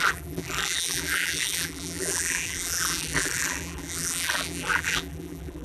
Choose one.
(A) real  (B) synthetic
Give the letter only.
B